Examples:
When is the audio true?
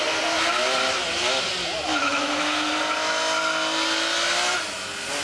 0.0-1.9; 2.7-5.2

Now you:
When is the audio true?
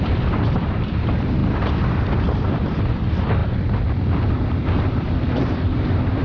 none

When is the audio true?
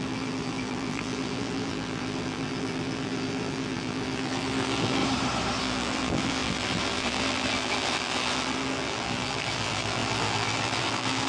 5.0-5.6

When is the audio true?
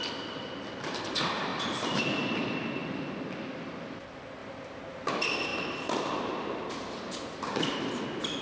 0.0-8.4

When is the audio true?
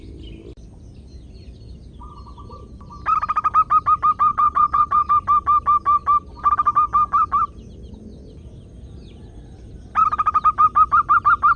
0.0-4.3; 5.1-11.6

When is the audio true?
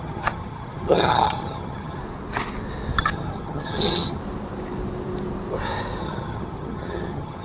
2.0-3.0; 4.2-6.0